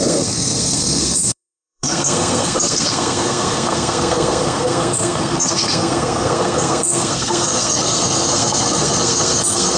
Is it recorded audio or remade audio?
remade